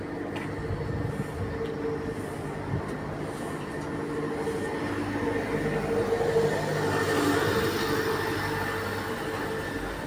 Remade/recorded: recorded